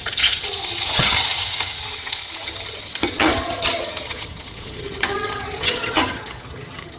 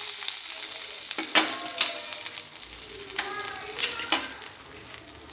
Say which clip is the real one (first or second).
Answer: second